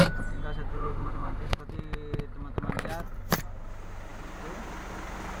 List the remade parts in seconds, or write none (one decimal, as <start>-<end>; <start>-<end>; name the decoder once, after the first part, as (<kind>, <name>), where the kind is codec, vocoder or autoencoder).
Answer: 0.7-1.6 (autoencoder, DAC-VAE)